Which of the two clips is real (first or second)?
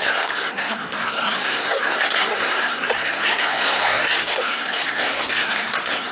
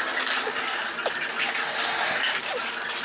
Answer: second